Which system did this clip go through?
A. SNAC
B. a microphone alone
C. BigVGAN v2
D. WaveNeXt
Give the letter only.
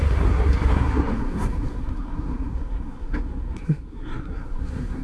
A